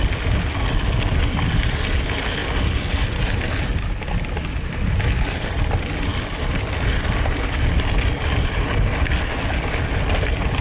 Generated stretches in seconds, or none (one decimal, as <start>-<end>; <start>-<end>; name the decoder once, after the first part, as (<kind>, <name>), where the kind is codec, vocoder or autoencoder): none

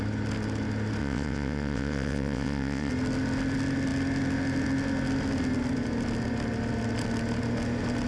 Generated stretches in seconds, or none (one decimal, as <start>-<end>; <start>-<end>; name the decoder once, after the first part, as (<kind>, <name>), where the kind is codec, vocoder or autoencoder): 1.0-2.9 (vocoder, WaveNeXt)

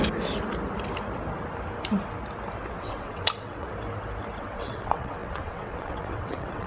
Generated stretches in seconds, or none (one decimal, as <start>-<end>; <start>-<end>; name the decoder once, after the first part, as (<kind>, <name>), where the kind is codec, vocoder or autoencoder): 2.7-3.7 (vocoder, WaveNeXt); 4.4-6.7

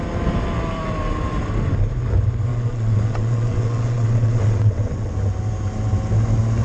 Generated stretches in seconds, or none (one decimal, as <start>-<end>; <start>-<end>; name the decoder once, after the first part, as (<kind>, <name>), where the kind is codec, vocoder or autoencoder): 2.5-5.1 (vocoder, WaveNeXt)

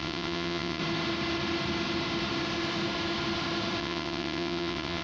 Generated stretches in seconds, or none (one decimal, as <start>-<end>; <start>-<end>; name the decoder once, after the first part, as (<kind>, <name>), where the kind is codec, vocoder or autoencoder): 0.0-0.8 (vocoder, WaveNeXt); 3.8-5.0